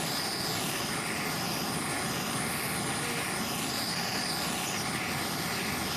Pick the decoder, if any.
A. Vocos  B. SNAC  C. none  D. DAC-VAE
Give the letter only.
C